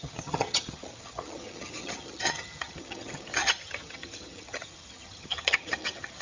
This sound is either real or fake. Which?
fake